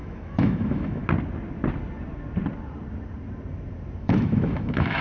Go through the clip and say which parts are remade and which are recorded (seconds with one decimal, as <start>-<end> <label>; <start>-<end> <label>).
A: 0.0-1.0 remade; 1.0-4.0 recorded; 4.0-5.0 remade